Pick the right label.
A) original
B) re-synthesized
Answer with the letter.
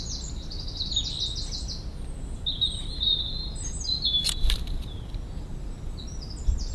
A